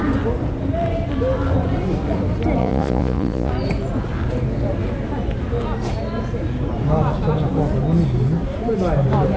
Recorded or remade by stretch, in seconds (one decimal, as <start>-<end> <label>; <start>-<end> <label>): 0.0-2.6 recorded; 2.6-3.5 remade; 3.5-9.4 recorded